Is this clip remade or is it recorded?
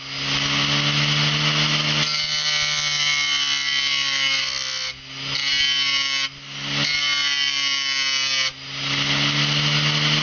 recorded